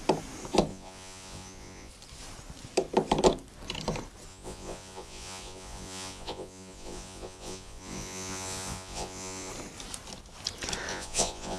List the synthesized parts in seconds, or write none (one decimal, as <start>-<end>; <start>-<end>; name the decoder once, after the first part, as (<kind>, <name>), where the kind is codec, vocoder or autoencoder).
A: 0.7-1.9 (vocoder, Vocos); 4.3-9.5; 10.9-11.6